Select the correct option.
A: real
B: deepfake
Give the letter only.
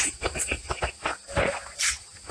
A